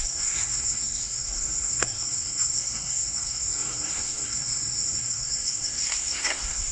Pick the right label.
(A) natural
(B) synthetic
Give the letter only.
B